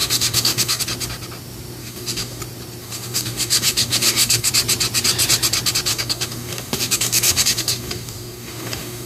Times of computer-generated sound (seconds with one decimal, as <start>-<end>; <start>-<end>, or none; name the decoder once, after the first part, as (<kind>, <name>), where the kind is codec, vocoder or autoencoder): 0.0-0.8 (codec, DAC); 1.8-2.4; 2.8-4.5; 5.9-9.1

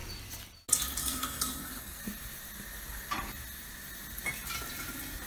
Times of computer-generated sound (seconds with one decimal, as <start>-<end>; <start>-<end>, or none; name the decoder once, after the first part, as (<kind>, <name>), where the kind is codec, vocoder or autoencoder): 1.0-2.0 (codec, SNAC)